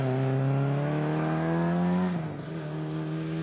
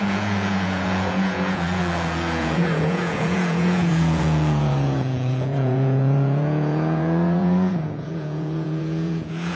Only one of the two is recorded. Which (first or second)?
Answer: first